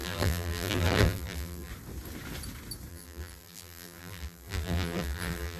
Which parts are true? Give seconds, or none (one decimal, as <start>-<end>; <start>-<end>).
1.7-2.9